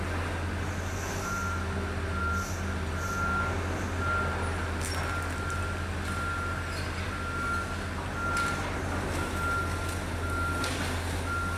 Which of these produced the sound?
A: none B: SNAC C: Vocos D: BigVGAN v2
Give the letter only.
A